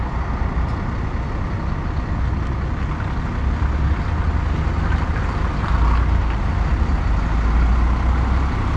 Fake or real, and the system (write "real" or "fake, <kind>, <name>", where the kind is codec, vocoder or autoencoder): real